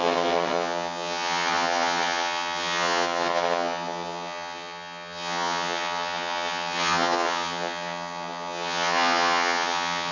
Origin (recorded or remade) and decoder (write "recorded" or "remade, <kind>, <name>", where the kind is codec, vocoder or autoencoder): remade, vocoder, HiFi-GAN